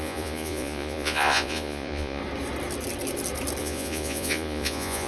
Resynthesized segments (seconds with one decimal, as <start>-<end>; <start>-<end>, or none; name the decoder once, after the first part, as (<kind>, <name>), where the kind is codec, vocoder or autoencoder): 0.0-2.2 (vocoder, Vocos); 3.6-5.1